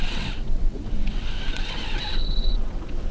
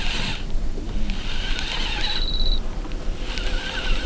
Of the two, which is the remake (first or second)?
first